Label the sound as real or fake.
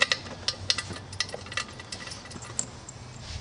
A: real